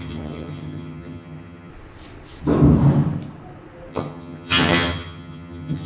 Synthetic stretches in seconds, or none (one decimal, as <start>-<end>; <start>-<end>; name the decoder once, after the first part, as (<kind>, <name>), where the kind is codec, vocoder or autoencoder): 0.0-1.7 (vocoder, HiFi-GAN); 3.9-5.9